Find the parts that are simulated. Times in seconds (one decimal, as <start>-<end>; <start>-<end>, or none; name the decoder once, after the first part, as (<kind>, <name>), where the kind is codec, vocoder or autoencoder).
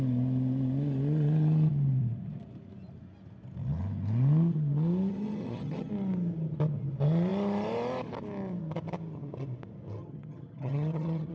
5.1-5.9 (vocoder, HiFi-GAN); 10.0-11.3